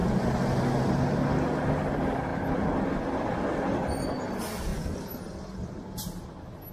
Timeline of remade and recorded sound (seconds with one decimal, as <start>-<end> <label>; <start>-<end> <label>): 0.0-6.7 recorded